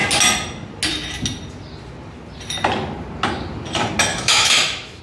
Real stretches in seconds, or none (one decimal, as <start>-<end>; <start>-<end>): 0.0-4.1